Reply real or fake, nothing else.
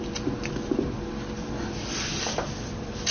fake